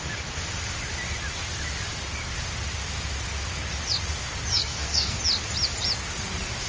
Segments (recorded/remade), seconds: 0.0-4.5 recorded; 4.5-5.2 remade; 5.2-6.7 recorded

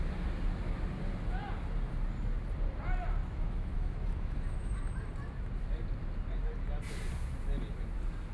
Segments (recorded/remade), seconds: 0.0-3.2 recorded; 3.2-4.8 remade; 4.8-8.3 recorded

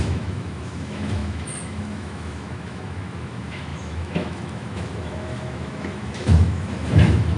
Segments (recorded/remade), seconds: 0.0-7.4 remade

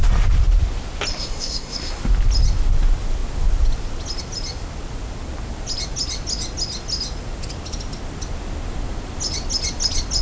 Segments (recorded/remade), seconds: 0.0-1.1 recorded; 1.1-2.0 remade; 2.0-10.2 recorded

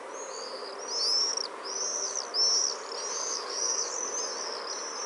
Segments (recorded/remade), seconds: 0.0-3.2 recorded; 3.2-3.9 remade; 3.9-5.1 recorded

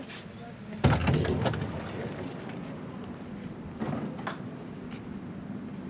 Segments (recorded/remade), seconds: 0.0-5.9 recorded

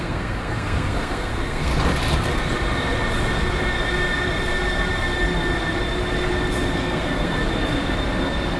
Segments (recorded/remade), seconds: 0.0-1.7 remade; 1.7-6.7 recorded; 6.7-7.4 remade; 7.4-8.6 recorded

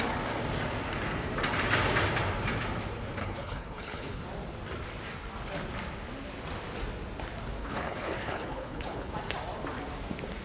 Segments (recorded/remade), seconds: 0.0-3.2 recorded; 3.2-4.2 remade; 4.2-7.6 recorded; 7.6-9.1 remade; 9.1-10.4 recorded